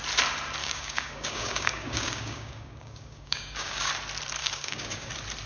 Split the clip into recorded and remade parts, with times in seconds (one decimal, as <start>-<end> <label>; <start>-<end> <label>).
0.0-0.6 recorded; 0.6-3.9 remade; 3.9-4.4 recorded; 4.4-5.1 remade; 5.1-5.5 recorded

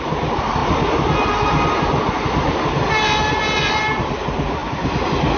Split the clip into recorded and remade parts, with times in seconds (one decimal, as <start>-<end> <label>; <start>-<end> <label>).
0.0-5.4 recorded